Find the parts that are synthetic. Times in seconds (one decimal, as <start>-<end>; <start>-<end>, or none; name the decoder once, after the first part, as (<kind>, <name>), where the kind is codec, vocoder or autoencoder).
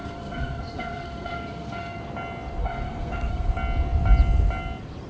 0.0-2.0 (codec, SNAC); 2.6-3.5